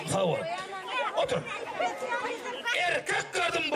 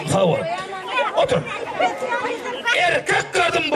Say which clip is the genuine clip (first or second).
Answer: first